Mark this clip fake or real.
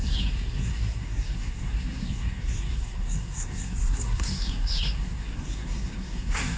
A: fake